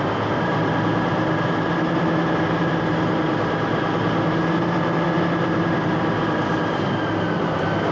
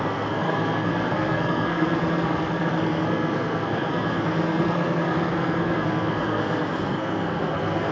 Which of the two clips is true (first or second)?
first